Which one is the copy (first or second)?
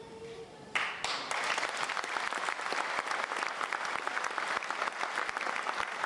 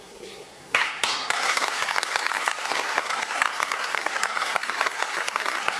second